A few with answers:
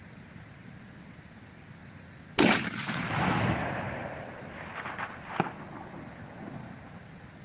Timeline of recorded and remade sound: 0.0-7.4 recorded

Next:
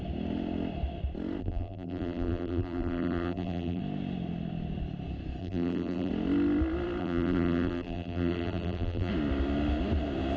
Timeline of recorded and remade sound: 0.0-1.4 recorded; 1.4-3.8 remade; 3.8-5.4 recorded; 5.4-6.1 remade; 6.1-7.0 recorded; 7.0-9.1 remade; 9.1-10.4 recorded

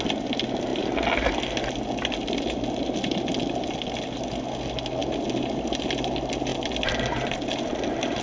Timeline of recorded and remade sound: 0.0-8.2 recorded

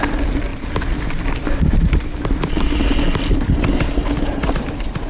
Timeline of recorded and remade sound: 0.0-5.1 recorded

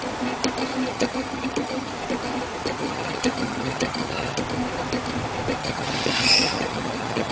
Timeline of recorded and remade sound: 0.0-0.9 recorded; 0.9-1.9 remade; 1.9-2.8 recorded; 2.8-4.4 remade; 4.4-5.6 recorded; 5.6-7.3 remade

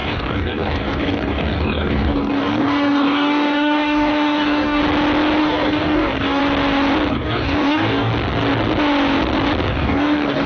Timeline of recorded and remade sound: 0.0-4.8 remade; 4.8-5.4 recorded; 5.4-6.4 remade; 6.4-7.1 recorded; 7.1-8.1 remade; 8.1-9.7 recorded; 9.7-10.5 remade

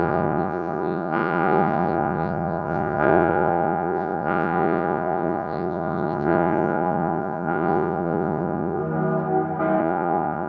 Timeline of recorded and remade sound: 0.0-8.8 remade; 8.8-9.8 recorded; 9.8-10.5 remade